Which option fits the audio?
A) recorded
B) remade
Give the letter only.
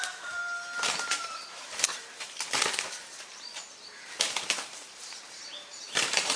B